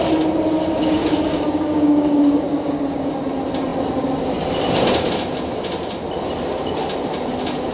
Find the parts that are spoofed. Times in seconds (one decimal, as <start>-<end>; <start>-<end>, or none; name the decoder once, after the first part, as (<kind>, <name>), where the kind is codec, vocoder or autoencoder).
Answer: 0.8-3.1 (codec, DAC)

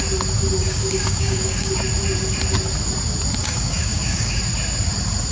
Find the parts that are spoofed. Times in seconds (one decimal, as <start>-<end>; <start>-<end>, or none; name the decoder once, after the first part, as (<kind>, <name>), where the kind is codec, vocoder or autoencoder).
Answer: 0.6-1.7 (codec, DAC); 3.4-4.4

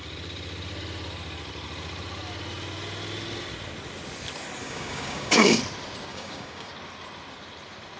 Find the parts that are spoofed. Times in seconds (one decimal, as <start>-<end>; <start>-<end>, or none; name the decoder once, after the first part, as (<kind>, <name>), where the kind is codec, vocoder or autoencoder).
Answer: 4.6-5.6 (codec, DAC); 6.1-6.7

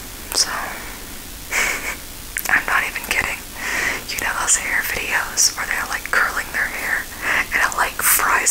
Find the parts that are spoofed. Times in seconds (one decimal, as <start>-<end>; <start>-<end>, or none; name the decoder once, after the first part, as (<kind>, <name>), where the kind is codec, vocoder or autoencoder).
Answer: none

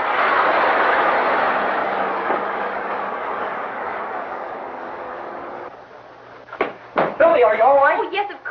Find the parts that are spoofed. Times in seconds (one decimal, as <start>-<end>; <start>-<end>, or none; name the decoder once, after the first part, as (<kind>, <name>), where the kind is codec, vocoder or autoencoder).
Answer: 1.8-5.7 (codec, DAC); 7.3-8.0

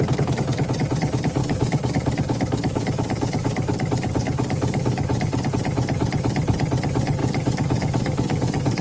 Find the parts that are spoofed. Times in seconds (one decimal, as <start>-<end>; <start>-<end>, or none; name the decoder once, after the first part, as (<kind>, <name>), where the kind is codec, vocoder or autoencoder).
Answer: 1.4-5.5 (codec, DAC); 7.2-8.8

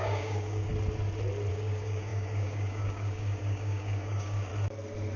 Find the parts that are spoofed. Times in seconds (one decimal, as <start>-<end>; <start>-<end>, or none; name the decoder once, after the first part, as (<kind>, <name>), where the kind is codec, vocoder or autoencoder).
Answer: 0.0-0.7 (codec, DAC); 1.5-4.5